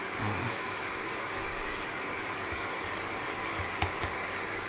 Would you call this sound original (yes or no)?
no